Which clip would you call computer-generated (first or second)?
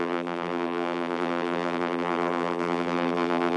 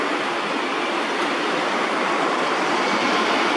first